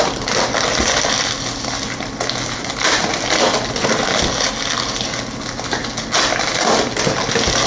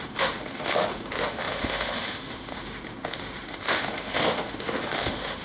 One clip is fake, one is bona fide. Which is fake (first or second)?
second